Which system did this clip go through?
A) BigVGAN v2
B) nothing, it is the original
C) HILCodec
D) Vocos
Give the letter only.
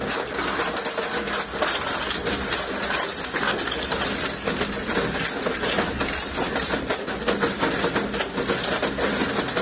B